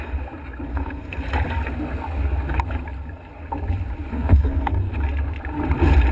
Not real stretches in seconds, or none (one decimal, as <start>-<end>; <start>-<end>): 0.7-1.2; 4.1-4.9